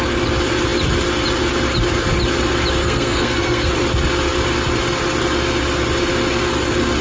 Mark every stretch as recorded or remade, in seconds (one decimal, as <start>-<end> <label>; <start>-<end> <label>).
0.0-2.8 recorded; 2.8-3.7 remade; 3.7-7.0 recorded